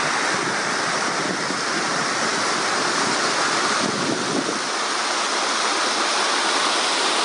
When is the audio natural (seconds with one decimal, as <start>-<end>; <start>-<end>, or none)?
0.0-7.2